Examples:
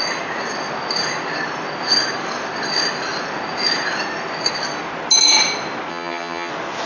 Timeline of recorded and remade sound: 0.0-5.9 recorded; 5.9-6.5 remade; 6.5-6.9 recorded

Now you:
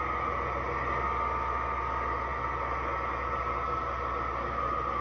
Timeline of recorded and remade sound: 0.0-5.0 recorded

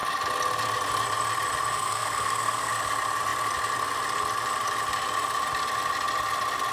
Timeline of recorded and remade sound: 0.0-1.7 recorded; 1.7-2.7 remade; 2.7-6.7 recorded

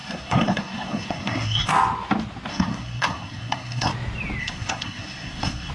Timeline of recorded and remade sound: 0.0-1.7 remade; 1.7-2.5 recorded; 2.5-3.9 remade; 3.9-4.4 recorded; 4.4-5.7 remade

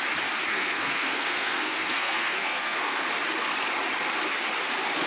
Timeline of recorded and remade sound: 0.0-0.5 recorded; 0.5-3.0 remade; 3.0-5.1 recorded

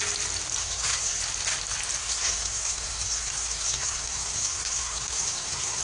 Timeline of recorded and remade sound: 0.0-0.6 recorded; 0.6-1.2 remade; 1.2-2.0 recorded; 2.0-5.8 remade

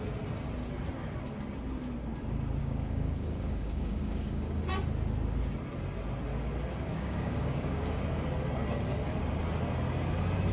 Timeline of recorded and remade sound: 0.0-2.6 recorded; 2.6-4.6 remade; 4.6-6.9 recorded; 6.9-8.0 remade; 8.0-10.5 recorded

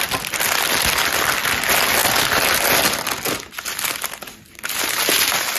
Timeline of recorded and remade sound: 0.0-5.6 recorded